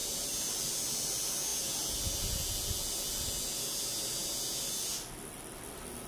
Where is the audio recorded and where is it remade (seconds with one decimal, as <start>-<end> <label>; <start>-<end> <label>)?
0.0-6.1 recorded